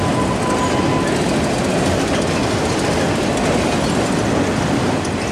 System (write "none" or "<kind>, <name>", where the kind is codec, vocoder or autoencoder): none